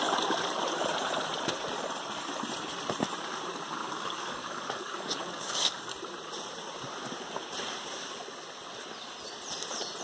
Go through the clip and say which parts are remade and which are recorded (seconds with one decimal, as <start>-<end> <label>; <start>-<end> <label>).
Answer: 0.0-3.8 recorded; 3.8-5.8 remade; 5.8-10.0 recorded